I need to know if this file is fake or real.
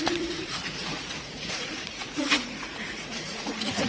fake